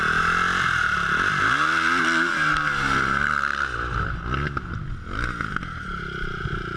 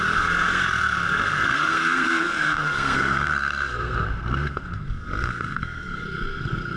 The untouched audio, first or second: first